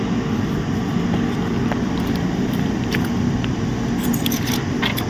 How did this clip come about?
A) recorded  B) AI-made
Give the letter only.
B